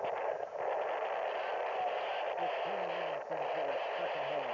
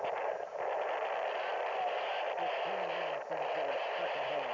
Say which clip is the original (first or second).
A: first